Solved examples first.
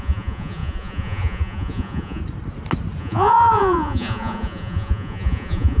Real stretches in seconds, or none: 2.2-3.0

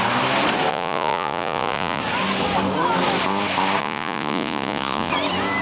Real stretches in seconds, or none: 0.0-0.7; 2.0-3.8; 5.1-5.6

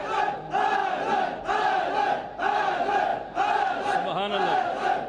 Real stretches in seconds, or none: 0.0-5.1

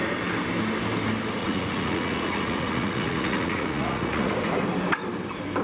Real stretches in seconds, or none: 0.0-1.4; 4.3-5.6

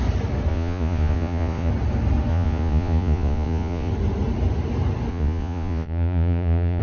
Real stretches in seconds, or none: 0.0-0.5; 1.7-2.3; 3.9-5.1

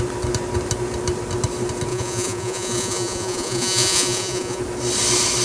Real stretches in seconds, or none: 0.0-1.9; 4.6-5.4

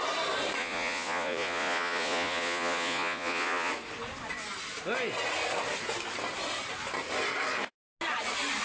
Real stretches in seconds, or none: 0.0-0.6; 3.7-8.6

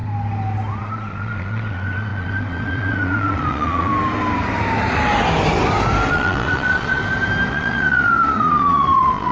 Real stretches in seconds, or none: 0.0-0.8; 3.9-6.1; 7.0-7.5